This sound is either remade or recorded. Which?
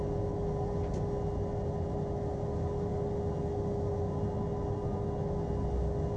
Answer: recorded